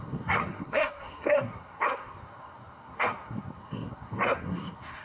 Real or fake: fake